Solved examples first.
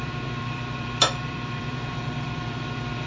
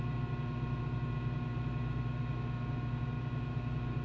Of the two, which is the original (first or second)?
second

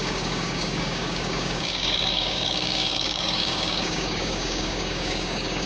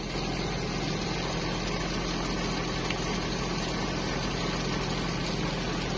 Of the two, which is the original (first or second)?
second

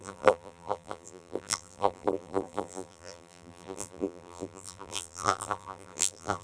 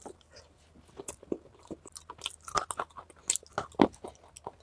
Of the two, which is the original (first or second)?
second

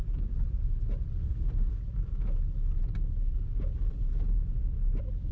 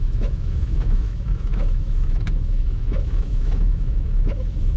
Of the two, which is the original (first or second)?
first